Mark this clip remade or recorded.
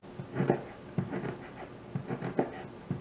recorded